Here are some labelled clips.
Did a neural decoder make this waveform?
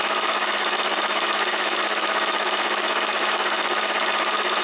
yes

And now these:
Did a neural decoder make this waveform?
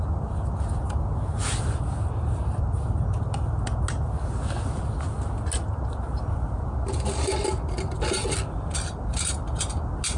no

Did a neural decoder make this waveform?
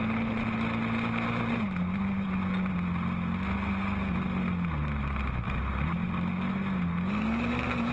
no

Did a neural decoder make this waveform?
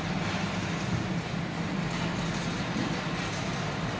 no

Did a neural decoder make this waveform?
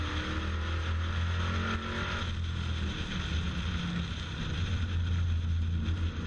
no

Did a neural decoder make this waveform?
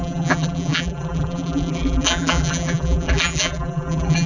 yes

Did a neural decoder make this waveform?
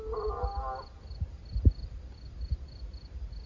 no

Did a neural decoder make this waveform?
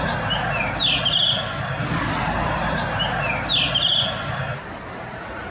no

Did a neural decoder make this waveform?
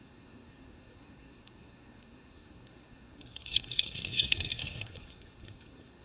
yes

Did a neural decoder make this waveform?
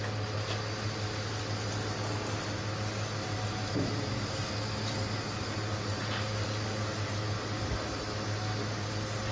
no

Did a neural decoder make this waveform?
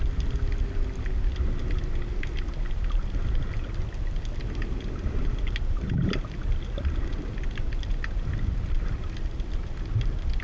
no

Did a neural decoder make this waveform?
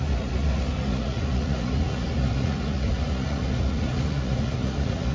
yes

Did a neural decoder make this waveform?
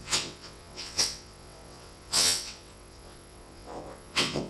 yes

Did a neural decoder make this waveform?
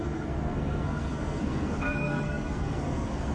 yes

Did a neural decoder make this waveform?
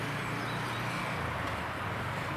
no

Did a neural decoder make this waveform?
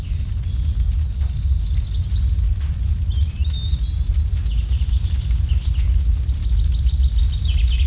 no